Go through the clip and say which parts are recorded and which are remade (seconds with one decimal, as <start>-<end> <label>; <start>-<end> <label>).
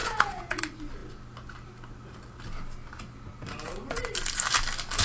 0.0-0.6 remade; 0.6-5.0 recorded